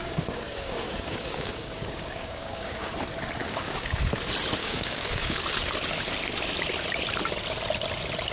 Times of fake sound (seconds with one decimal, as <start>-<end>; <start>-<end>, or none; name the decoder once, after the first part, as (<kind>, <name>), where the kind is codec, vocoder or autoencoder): 0.0-2.9 (codec, DAC); 3.4-4.0; 4.6-5.4